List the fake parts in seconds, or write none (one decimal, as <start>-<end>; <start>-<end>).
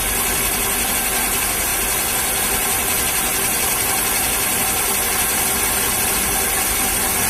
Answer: none